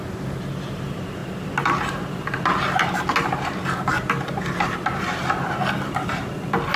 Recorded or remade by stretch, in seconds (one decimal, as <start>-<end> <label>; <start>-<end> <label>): 0.0-6.8 recorded